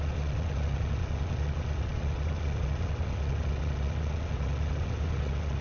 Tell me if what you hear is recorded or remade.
remade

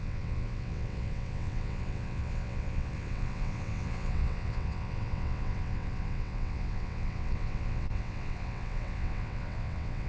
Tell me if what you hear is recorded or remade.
remade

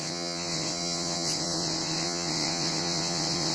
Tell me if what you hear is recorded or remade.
remade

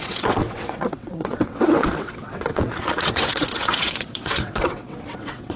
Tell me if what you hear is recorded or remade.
remade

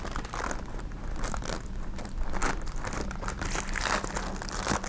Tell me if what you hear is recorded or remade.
recorded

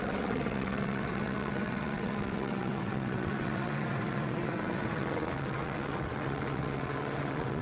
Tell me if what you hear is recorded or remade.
remade